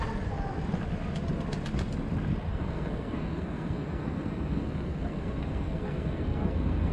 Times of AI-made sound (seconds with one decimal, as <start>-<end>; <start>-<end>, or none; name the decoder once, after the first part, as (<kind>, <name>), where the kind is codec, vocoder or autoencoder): 2.5-6.9 (codec, SNAC)